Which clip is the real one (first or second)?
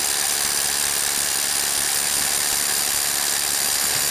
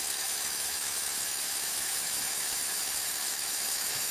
first